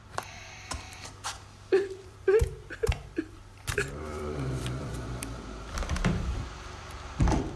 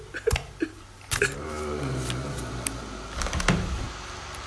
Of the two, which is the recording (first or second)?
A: second